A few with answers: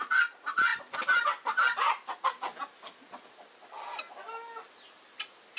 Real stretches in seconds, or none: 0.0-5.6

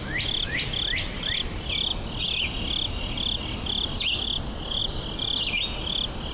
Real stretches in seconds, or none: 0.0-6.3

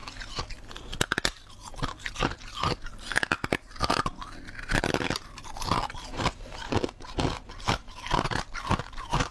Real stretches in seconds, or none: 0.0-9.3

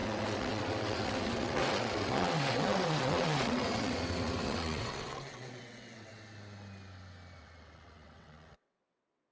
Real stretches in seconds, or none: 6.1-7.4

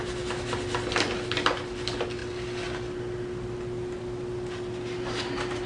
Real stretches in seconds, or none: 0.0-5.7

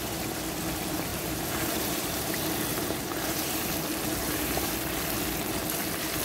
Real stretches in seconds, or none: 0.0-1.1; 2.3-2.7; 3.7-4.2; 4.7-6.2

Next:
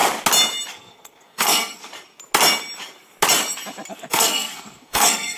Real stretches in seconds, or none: 0.0-0.7; 1.9-3.9